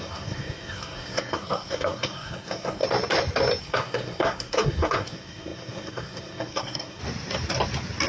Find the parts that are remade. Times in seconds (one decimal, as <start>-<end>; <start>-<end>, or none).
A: 0.0-2.8; 3.6-7.0